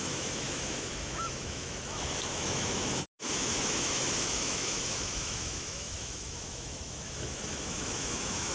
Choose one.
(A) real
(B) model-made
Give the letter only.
B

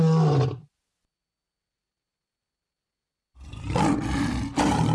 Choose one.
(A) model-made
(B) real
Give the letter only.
B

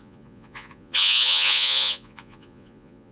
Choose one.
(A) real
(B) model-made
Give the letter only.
B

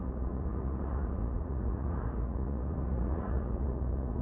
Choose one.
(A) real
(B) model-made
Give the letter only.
B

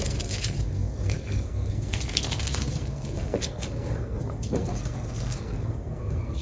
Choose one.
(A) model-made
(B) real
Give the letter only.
A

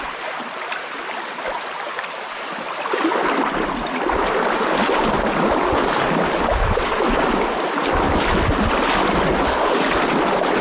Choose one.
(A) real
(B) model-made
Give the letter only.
A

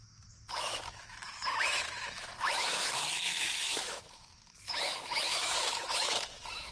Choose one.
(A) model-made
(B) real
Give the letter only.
A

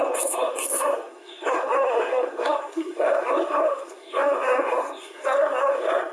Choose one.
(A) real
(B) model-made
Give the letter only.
B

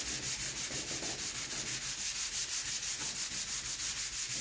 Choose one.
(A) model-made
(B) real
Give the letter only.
B